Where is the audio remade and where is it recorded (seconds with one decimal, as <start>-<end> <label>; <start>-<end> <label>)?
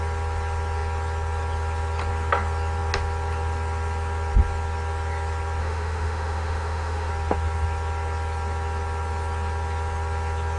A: 0.0-5.6 recorded; 5.6-7.1 remade; 7.1-10.6 recorded